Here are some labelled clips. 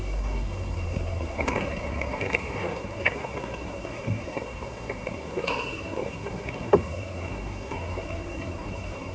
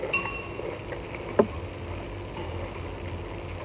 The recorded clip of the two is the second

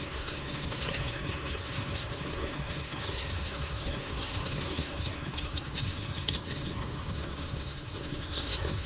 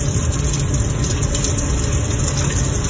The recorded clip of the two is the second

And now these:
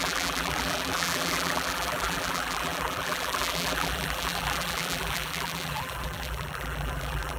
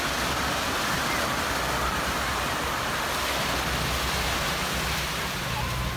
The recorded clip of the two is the second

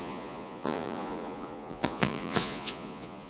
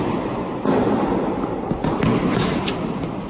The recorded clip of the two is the second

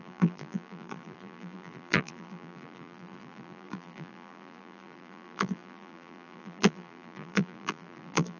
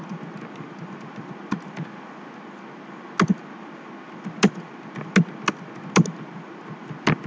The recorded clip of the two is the second